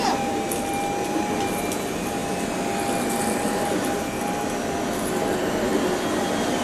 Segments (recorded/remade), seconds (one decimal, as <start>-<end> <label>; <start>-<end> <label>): 0.0-6.6 recorded